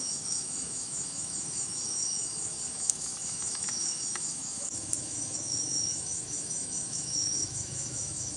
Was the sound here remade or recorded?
remade